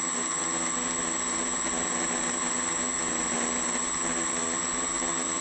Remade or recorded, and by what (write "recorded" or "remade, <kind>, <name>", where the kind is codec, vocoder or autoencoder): recorded